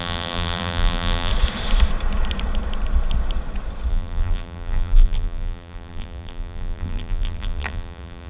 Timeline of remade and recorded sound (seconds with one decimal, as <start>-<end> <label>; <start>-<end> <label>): 0.0-1.3 remade; 1.3-3.9 recorded; 3.9-8.3 remade

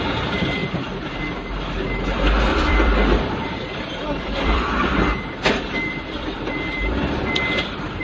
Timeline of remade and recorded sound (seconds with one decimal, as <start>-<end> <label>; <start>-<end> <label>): 0.0-2.5 recorded; 2.5-7.3 remade; 7.3-8.0 recorded

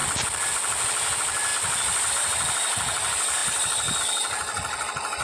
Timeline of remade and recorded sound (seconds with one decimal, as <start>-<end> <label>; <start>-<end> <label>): 0.0-0.5 remade; 0.5-1.5 recorded; 1.5-2.1 remade; 2.1-5.2 recorded

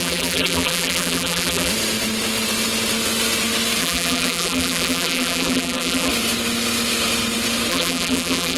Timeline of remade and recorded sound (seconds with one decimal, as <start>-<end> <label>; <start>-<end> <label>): 0.0-1.7 remade; 1.7-3.8 recorded; 3.8-6.1 remade; 6.1-7.7 recorded; 7.7-8.6 remade

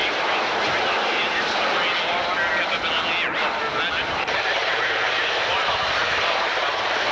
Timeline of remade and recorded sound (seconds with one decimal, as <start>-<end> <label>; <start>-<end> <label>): 0.0-4.1 recorded; 4.1-7.1 remade

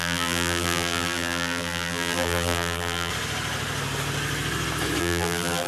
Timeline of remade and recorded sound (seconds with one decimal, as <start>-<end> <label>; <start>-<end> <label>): 0.0-3.1 remade; 3.1-5.0 recorded; 5.0-5.7 remade

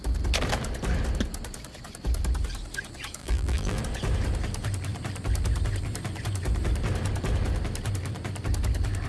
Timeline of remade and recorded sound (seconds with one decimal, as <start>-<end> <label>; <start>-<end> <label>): 0.0-3.2 recorded; 3.2-3.8 remade; 3.8-9.1 recorded